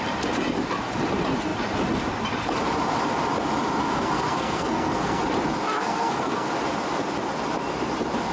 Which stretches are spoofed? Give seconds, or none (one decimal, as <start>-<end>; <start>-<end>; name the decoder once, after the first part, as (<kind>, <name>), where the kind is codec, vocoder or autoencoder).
3.8-5.2 (codec, SNAC); 5.7-6.5